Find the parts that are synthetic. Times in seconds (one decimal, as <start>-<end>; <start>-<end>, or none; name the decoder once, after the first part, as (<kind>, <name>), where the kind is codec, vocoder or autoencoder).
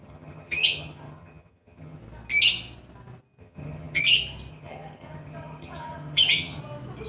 0.0-2.0 (vocoder, HiFi-GAN); 3.4-4.0; 4.5-6.6